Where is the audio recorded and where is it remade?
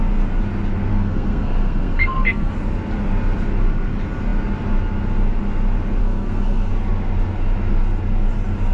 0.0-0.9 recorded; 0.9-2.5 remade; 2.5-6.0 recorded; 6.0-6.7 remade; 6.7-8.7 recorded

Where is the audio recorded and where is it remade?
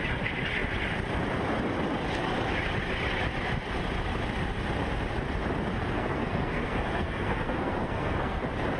0.0-5.7 recorded; 5.7-8.4 remade; 8.4-8.8 recorded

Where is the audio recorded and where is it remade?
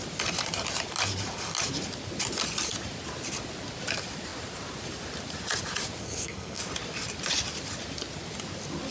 0.0-6.0 recorded; 6.0-6.6 remade; 6.6-8.9 recorded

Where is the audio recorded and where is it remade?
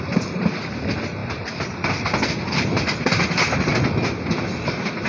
0.0-5.1 recorded